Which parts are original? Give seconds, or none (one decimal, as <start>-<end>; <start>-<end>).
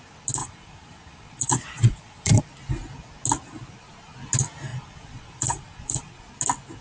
0.0-0.4; 2.4-4.7; 6.2-6.8